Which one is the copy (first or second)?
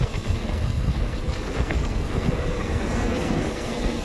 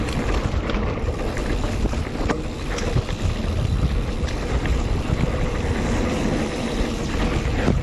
first